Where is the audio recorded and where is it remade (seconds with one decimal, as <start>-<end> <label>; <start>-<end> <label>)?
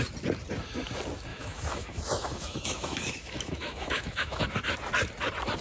0.0-1.3 recorded; 1.3-4.4 remade; 4.4-5.6 recorded